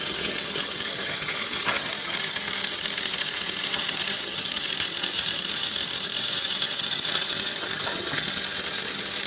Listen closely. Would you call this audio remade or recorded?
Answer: remade